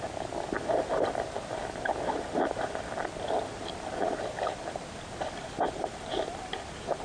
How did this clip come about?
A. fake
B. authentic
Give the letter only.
B